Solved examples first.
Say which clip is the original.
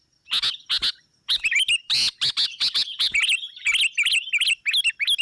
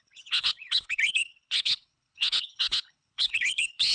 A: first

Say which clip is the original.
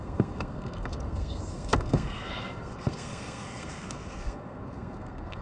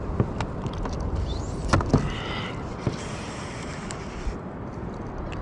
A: second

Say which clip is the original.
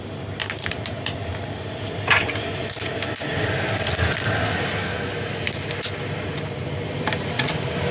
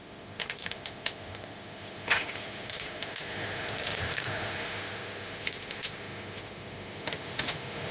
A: first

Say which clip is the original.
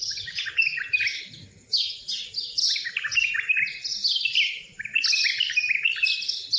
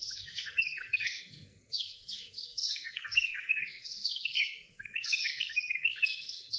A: first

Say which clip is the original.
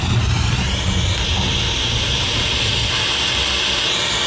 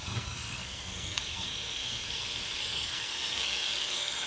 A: first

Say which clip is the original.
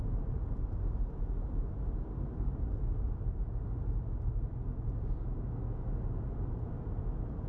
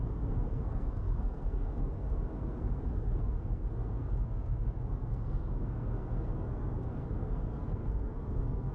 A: first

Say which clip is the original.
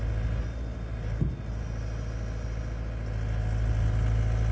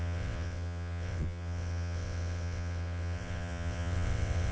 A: first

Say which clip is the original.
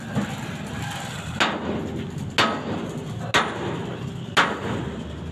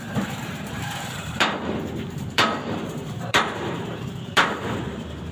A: first